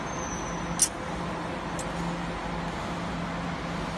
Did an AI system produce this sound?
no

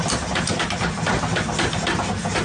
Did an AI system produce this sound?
no